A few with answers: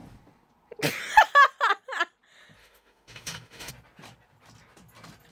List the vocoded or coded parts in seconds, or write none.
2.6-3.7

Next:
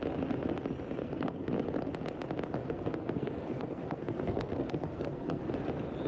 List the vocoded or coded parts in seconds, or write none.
1.0-1.5; 2.6-5.4

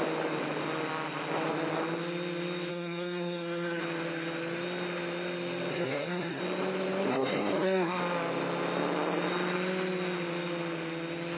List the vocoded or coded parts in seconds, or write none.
2.7-3.8; 5.7-6.4; 7.1-8.0

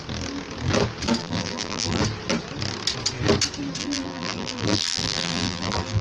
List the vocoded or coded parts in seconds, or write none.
1.2-2.0; 3.8-6.0

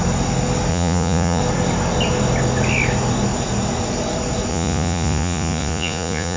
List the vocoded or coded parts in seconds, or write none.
0.7-1.4; 4.5-6.4

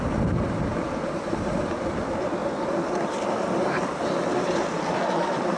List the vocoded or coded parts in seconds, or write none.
none

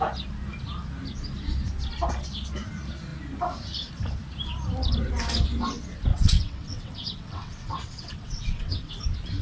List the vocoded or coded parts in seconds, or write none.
6.1-8.9

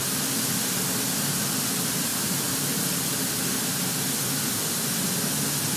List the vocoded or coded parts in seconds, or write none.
none